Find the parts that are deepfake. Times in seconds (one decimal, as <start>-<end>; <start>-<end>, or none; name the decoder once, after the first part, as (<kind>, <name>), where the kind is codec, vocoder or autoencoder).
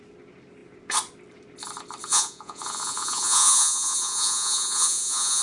2.1-5.4 (vocoder, Vocos)